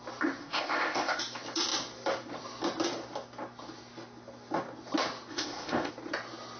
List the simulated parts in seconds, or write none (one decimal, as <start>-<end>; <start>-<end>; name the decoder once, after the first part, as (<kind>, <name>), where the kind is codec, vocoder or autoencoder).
0.4-1.2 (codec, ZipCodec); 5.3-5.9